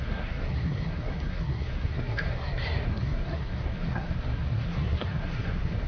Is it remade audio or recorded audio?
remade